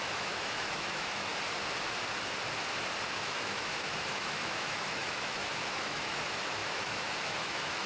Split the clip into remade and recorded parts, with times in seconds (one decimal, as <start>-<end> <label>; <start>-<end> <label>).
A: 0.0-1.3 remade; 1.3-3.1 recorded; 3.1-7.9 remade